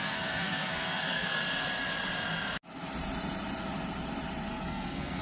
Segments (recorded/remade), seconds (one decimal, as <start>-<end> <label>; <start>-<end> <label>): 0.0-1.4 remade; 1.4-4.5 recorded; 4.5-5.2 remade